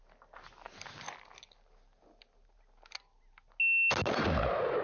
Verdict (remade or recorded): recorded